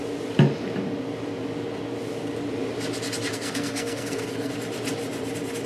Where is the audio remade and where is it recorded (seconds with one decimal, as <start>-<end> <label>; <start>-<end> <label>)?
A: 0.0-3.3 recorded; 3.3-4.5 remade; 4.5-5.7 recorded